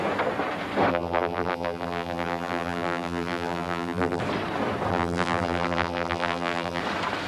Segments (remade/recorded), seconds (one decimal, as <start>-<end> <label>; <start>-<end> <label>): 0.0-0.9 recorded; 0.9-4.2 remade; 4.2-4.9 recorded; 4.9-6.8 remade; 6.8-7.3 recorded